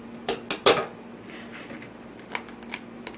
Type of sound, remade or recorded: recorded